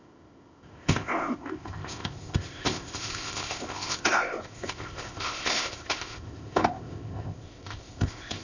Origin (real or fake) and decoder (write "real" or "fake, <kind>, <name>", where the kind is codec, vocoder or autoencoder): fake, codec, ZipCodec